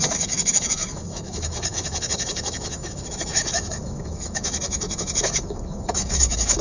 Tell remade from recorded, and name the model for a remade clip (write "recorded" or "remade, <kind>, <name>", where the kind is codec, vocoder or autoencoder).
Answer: remade, autoencoder, DAC-VAE